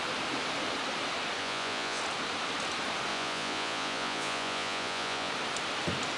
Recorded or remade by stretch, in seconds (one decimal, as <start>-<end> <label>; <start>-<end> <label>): 0.0-1.4 recorded; 1.4-2.0 remade; 2.0-3.1 recorded; 3.1-5.3 remade; 5.3-6.2 recorded